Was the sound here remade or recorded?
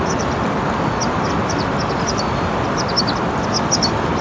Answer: recorded